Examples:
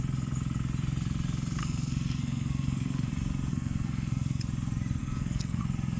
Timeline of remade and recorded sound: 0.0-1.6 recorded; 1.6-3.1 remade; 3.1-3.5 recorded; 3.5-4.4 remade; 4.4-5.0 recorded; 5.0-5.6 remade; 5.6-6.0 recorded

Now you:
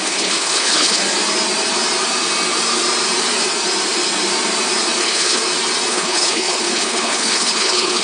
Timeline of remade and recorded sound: 0.0-1.0 remade; 1.0-5.0 recorded; 5.0-5.4 remade; 5.4-5.9 recorded; 5.9-8.0 remade

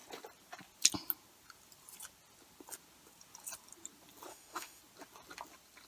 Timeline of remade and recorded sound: 0.0-4.3 recorded; 4.3-4.8 remade; 4.8-5.9 recorded

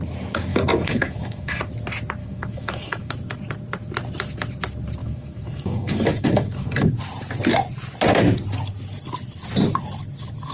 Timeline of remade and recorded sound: 0.0-0.5 recorded; 0.5-1.6 remade; 1.6-2.2 recorded; 2.2-3.1 remade; 3.1-5.0 recorded; 5.0-6.9 remade; 6.9-10.5 recorded

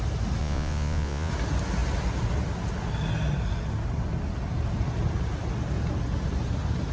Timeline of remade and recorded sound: 0.0-0.4 recorded; 0.4-1.3 remade; 1.3-6.9 recorded

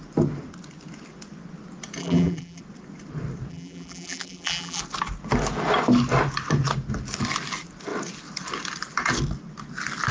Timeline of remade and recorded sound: 0.0-2.0 recorded; 2.0-2.6 remade; 2.6-3.5 recorded; 3.5-4.8 remade; 4.8-10.1 recorded

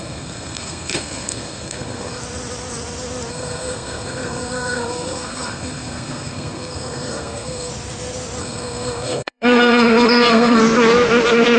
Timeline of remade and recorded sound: 0.0-2.2 remade; 2.2-3.3 recorded; 3.3-7.7 remade; 7.7-8.4 recorded; 8.4-10.6 remade; 10.6-11.6 recorded

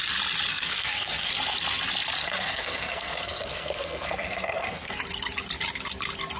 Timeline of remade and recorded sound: 0.0-0.5 recorded; 0.5-1.3 remade; 1.3-2.2 recorded; 2.2-5.0 remade; 5.0-6.4 recorded